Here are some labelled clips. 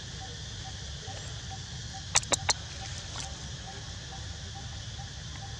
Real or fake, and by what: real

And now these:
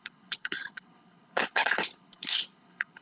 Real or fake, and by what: fake, codec, HILCodec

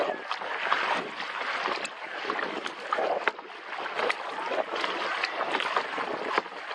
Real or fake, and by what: real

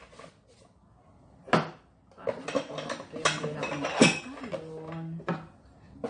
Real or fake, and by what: real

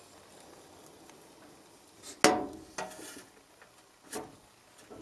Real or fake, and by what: real